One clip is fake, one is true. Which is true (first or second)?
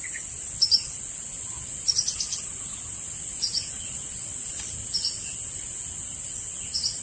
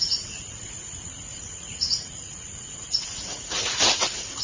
first